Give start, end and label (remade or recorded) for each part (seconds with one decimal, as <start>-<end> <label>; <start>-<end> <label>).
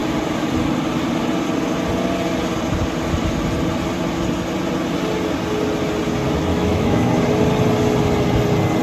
0.0-6.5 recorded; 6.5-7.1 remade; 7.1-8.8 recorded